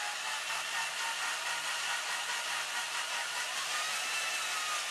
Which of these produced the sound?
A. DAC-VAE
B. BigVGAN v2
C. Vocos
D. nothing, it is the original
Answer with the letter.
D